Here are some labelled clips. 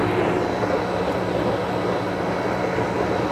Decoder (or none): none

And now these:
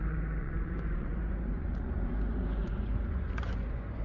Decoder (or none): vocoder, Vocos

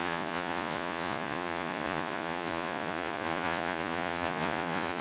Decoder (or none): vocoder, Vocos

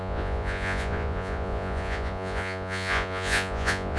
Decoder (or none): vocoder, Vocos